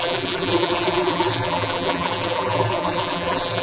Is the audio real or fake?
fake